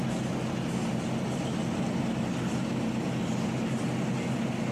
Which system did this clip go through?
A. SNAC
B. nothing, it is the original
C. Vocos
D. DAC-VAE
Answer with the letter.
B